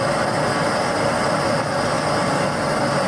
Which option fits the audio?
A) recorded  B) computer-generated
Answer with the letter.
A